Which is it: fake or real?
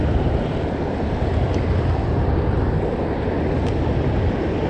real